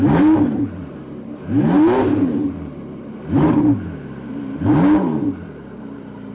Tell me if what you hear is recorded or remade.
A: remade